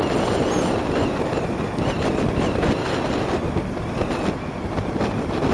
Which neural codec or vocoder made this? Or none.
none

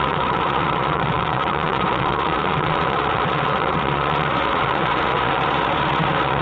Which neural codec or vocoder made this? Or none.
vocoder, Vocos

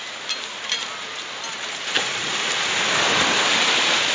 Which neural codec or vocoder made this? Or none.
none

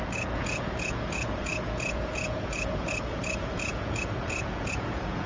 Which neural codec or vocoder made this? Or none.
vocoder, Vocos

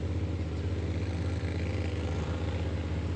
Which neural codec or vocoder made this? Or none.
none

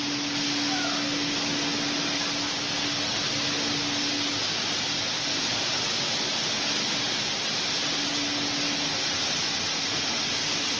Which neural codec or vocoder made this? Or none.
none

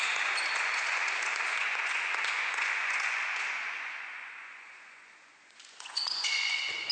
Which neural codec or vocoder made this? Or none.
vocoder, Vocos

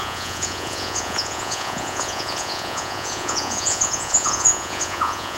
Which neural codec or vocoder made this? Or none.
vocoder, Vocos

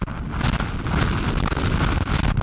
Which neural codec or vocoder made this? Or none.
none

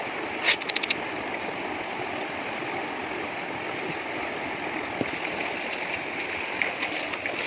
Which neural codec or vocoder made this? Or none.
none